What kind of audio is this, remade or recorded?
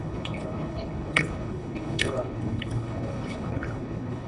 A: remade